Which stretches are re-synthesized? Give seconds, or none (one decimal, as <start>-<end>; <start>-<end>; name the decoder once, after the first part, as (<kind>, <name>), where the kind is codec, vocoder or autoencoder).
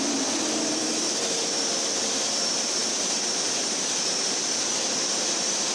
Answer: 0.0-5.7 (vocoder, BigVGAN v2)